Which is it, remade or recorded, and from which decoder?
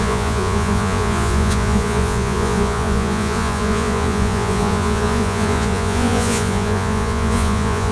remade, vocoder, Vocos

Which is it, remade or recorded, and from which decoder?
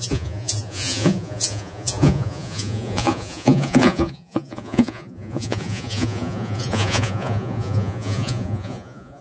remade, vocoder, Vocos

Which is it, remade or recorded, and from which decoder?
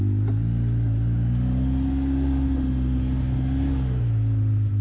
recorded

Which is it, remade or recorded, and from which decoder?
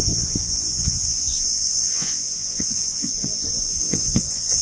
remade, vocoder, Vocos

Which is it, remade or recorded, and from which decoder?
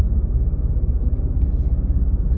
recorded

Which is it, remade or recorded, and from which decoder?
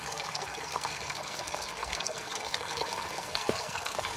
remade, codec, SNAC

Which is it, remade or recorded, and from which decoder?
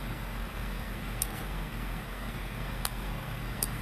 remade, codec, SNAC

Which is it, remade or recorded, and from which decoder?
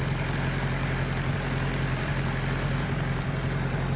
remade, vocoder, BigVGAN v2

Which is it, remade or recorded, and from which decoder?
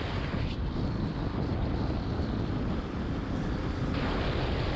recorded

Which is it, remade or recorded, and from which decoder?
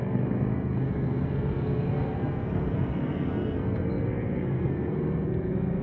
remade, codec, SNAC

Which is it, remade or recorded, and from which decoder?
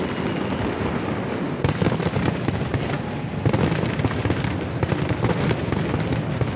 recorded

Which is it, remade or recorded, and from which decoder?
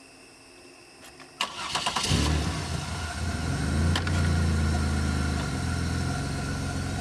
recorded